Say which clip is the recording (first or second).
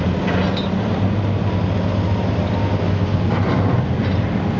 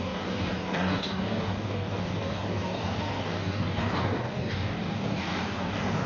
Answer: first